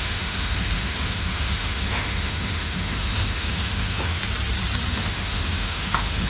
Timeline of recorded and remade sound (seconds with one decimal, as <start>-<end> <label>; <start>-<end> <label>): 0.0-4.2 remade; 4.2-4.9 recorded; 4.9-6.3 remade